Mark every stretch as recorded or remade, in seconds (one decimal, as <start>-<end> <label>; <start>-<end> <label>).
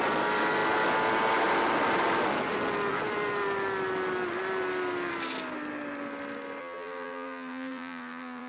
0.0-6.6 recorded; 6.6-8.5 remade